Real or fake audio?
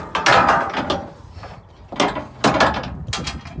real